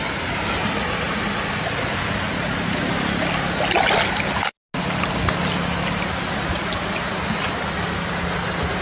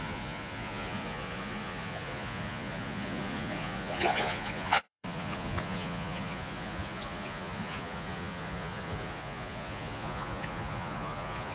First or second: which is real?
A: first